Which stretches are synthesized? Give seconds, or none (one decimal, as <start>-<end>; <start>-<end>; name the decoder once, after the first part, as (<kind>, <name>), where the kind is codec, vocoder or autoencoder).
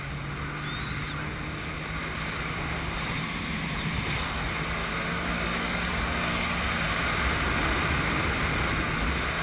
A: 4.8-6.6 (codec, DAC)